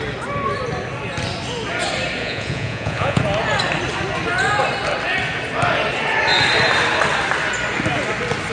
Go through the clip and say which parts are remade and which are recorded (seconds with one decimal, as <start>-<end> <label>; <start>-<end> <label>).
0.0-2.2 recorded; 2.2-3.2 remade; 3.2-8.5 recorded